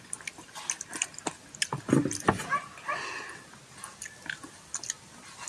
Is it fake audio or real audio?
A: real